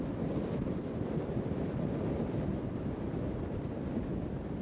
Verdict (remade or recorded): recorded